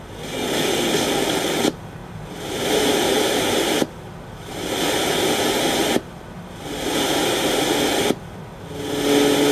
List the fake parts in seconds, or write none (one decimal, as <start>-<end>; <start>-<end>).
2.0-3.1